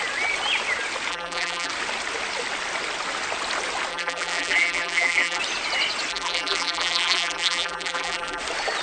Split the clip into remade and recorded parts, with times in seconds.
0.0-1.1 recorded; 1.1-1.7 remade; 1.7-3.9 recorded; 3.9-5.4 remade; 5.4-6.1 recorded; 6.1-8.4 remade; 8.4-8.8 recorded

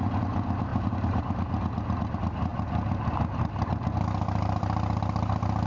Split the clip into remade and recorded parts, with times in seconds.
0.0-0.7 recorded; 0.7-1.2 remade; 1.2-5.7 recorded

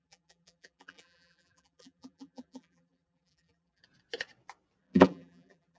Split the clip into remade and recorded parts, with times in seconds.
0.0-3.8 remade; 3.8-4.8 recorded; 4.8-5.8 remade

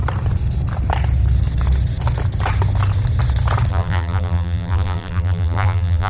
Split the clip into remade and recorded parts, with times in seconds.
0.0-3.7 recorded; 3.7-6.1 remade